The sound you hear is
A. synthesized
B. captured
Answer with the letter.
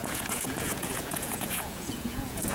A